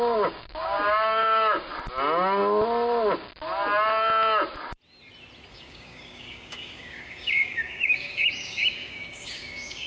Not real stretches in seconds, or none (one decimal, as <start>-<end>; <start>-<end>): 0.0-1.7; 5.5-9.9